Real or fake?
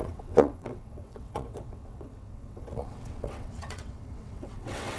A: fake